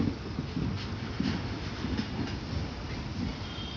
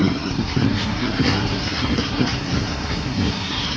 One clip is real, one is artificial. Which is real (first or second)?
first